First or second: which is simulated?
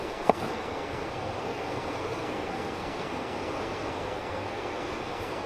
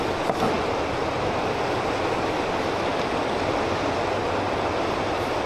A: first